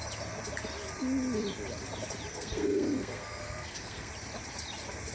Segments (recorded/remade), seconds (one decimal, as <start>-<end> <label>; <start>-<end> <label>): 0.0-2.3 recorded; 2.3-4.1 remade; 4.1-5.1 recorded

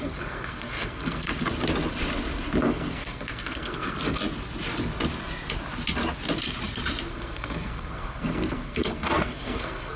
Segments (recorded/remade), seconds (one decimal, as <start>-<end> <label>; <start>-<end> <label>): 0.0-1.3 remade; 1.3-2.6 recorded; 2.6-4.2 remade; 4.2-7.1 recorded; 7.1-10.0 remade